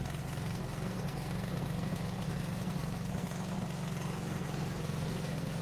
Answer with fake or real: fake